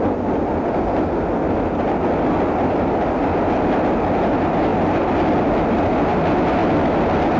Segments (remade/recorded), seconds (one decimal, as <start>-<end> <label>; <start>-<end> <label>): 0.0-7.4 recorded